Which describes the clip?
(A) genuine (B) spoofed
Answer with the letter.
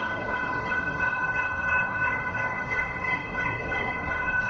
B